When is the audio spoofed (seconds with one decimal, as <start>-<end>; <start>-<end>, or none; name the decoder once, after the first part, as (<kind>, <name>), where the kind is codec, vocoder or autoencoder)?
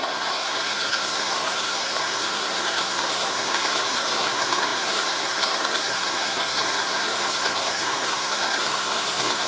0.0-9.5 (codec, SNAC)